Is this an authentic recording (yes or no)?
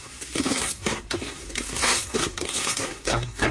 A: no